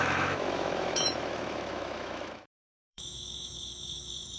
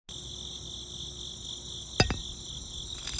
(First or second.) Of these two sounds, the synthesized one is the first